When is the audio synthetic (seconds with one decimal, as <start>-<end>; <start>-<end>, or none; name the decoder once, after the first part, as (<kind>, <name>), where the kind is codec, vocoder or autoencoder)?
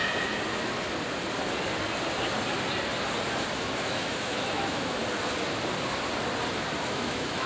3.5-5.0 (autoencoder, DAC-VAE); 6.8-7.5